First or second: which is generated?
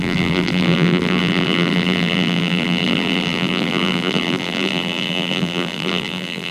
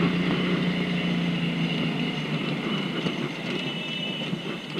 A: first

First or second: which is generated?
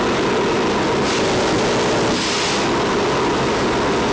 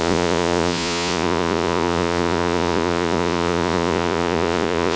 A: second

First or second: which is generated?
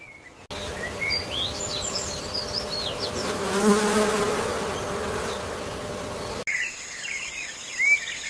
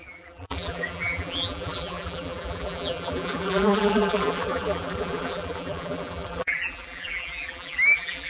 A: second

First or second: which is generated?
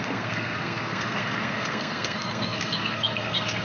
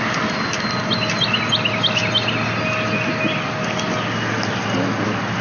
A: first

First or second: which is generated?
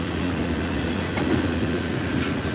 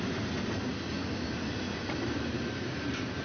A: first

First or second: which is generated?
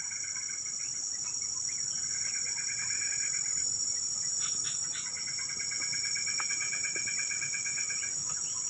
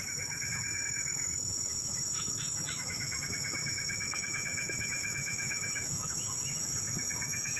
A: second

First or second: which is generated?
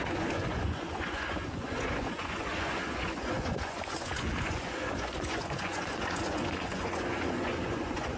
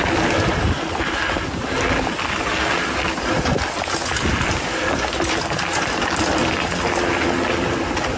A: first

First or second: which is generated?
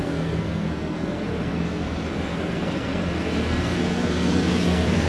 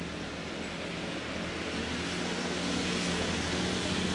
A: first